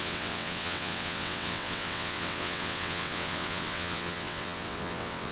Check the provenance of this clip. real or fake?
fake